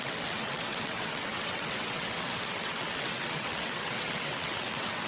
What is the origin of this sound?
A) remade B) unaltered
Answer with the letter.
A